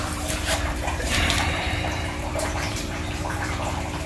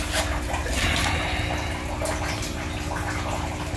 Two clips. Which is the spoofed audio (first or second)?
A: first